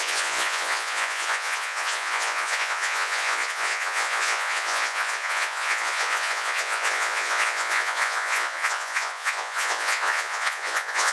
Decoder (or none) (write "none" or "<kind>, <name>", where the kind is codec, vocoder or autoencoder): vocoder, Vocos